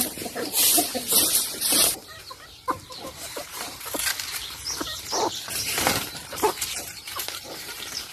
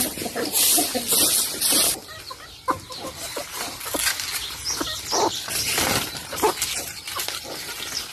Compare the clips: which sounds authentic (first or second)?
second